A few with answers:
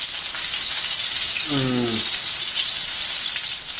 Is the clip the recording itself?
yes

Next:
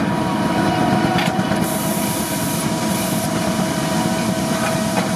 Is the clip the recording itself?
no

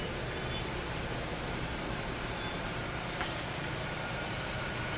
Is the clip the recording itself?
no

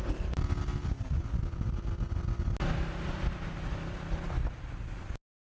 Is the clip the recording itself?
yes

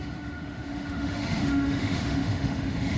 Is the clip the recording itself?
no